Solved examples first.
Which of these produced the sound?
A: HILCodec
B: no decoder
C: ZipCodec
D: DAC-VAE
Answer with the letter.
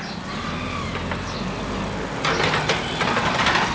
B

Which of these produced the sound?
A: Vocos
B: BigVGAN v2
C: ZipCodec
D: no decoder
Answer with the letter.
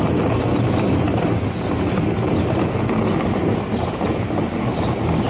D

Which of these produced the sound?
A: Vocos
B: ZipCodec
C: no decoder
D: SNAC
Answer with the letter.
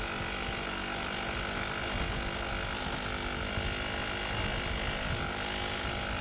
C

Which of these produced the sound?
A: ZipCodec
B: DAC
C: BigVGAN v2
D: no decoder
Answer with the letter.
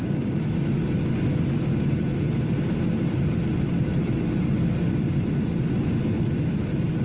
D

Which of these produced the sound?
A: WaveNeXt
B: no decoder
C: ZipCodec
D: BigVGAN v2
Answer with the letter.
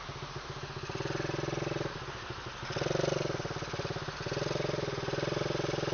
B